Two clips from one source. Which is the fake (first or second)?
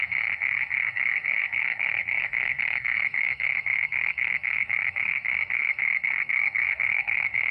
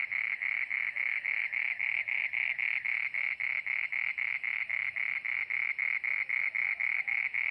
first